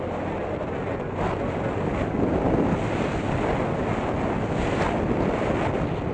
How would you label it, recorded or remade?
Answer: recorded